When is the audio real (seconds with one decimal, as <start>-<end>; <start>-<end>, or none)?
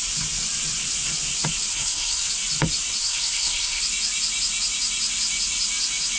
0.0-1.7; 2.3-3.0; 3.8-6.2